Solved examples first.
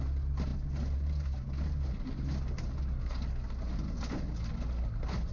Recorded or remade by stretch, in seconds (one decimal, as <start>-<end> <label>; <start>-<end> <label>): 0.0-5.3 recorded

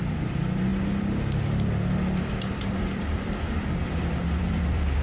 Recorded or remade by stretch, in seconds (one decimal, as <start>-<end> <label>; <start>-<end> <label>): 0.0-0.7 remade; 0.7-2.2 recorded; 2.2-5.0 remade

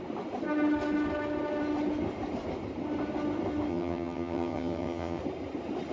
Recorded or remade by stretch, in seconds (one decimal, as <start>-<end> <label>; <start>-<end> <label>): 0.0-3.7 recorded; 3.7-5.2 remade; 5.2-5.9 recorded

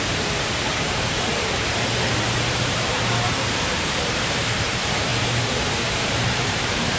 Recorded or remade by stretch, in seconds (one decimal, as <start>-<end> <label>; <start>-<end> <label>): 0.0-7.0 remade

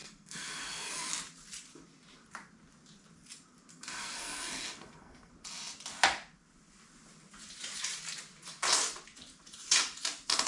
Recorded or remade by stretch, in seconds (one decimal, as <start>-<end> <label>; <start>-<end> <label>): 0.0-1.1 remade; 1.1-3.7 recorded; 3.7-5.3 remade; 5.3-10.5 recorded

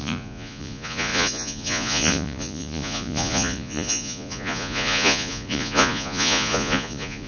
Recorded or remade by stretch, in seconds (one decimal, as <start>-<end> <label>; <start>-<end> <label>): 0.0-7.3 remade

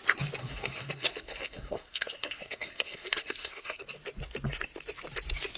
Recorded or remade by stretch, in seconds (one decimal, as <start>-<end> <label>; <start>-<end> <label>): 0.0-0.4 recorded; 0.4-3.8 remade; 3.8-5.6 recorded